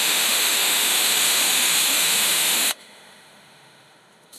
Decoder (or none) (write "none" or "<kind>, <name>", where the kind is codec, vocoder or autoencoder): autoencoder, DAC-VAE